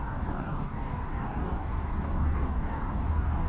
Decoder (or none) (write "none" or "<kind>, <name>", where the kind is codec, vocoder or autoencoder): codec, DAC